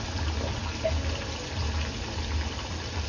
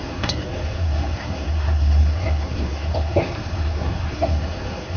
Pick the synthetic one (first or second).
second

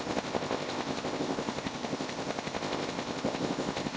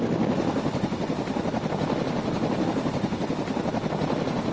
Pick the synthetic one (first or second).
first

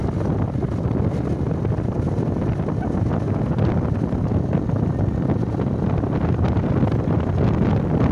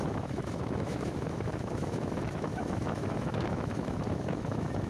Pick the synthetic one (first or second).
second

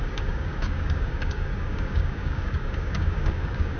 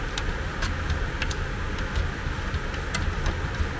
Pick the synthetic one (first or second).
first